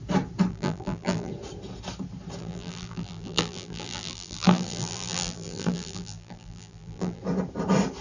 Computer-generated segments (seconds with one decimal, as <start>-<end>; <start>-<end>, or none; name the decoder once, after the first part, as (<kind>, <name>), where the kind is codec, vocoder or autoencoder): 0.5-1.3 (vocoder, BigVGAN v2); 2.4-7.2

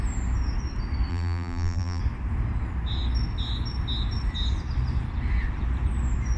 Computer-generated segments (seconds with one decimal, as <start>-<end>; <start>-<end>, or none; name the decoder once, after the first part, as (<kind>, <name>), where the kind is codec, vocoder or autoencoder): 1.1-2.0 (vocoder, BigVGAN v2)